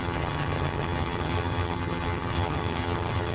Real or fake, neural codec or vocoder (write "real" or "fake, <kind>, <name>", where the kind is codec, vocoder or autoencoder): fake, vocoder, HiFi-GAN